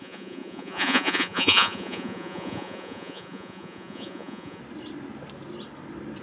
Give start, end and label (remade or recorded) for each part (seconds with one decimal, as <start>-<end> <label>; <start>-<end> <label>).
0.0-4.6 remade; 4.6-6.2 recorded